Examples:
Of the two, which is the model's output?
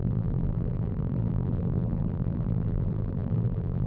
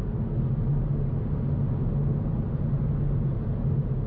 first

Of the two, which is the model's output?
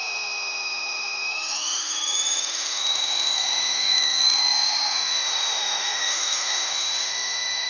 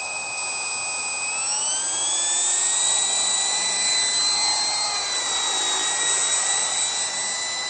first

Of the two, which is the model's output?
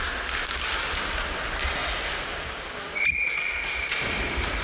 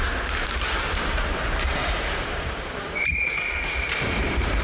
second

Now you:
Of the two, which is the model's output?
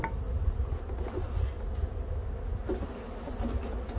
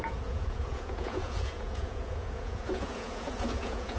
second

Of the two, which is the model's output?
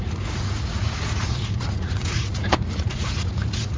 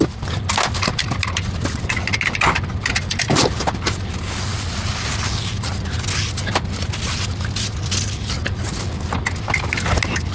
first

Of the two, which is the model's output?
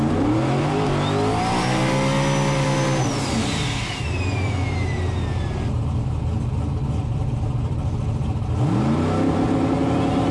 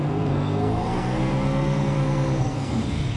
second